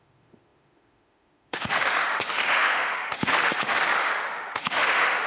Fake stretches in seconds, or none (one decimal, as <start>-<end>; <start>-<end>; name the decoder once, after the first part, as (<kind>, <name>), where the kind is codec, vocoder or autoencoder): 0.0-5.3 (autoencoder, DAC-VAE)